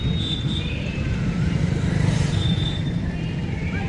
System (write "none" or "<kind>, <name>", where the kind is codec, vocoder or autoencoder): none